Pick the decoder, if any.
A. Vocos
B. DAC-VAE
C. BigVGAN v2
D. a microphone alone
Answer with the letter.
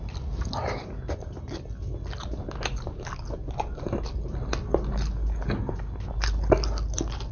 D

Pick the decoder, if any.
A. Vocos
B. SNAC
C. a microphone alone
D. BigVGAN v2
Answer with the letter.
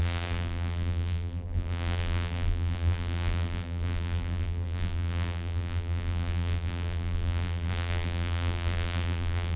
D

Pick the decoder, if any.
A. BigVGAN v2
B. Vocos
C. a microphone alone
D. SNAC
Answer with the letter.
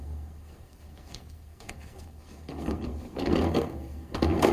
D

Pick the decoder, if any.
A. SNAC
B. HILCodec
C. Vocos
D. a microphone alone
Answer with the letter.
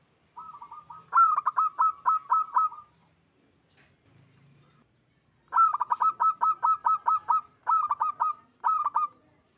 D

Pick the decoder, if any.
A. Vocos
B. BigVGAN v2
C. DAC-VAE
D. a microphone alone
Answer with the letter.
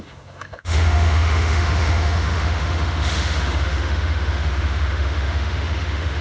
C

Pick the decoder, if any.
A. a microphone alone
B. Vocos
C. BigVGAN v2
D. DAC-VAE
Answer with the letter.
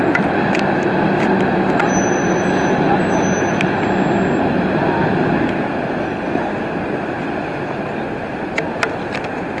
A